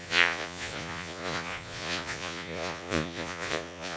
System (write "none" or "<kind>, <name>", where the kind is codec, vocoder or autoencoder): vocoder, Vocos